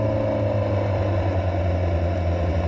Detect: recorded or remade recorded